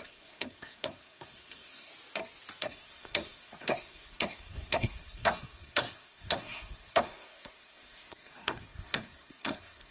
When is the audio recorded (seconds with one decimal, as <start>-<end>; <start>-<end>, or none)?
1.9-2.6